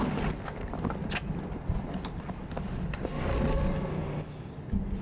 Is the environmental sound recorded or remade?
recorded